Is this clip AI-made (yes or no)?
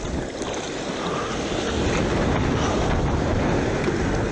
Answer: no